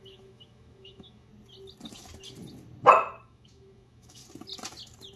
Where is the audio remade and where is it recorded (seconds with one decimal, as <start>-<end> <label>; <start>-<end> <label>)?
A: 0.0-1.3 remade; 1.3-3.2 recorded; 3.2-4.2 remade; 4.2-5.2 recorded